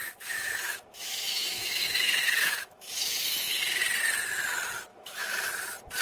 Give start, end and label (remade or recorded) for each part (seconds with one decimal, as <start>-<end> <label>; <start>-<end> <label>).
0.0-3.6 remade; 3.6-4.9 recorded; 4.9-5.5 remade; 5.5-6.0 recorded